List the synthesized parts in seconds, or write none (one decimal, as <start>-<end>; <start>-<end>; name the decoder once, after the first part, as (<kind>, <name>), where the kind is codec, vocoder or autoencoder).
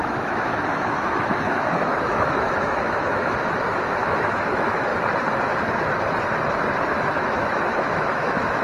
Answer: 0.0-4.9 (autoencoder, DAC-VAE); 6.9-8.6